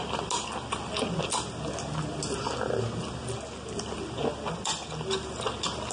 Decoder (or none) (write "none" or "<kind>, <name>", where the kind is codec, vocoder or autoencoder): none